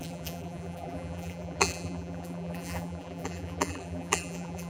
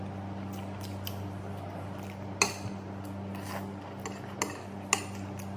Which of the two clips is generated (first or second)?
first